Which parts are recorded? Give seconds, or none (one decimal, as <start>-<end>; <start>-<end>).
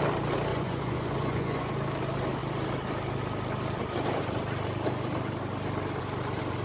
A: 0.0-0.5; 1.7-6.6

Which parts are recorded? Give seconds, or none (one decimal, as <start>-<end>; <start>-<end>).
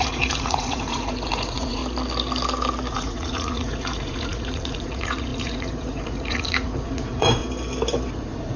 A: 1.8-2.9; 7.4-8.1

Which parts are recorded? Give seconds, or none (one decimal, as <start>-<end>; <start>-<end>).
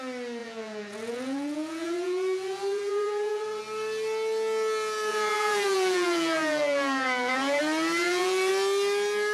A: 0.0-0.4; 3.6-5.1; 7.6-8.0; 8.5-9.3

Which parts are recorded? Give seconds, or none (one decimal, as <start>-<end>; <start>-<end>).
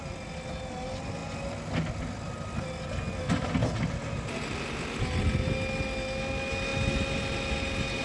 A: 0.0-8.0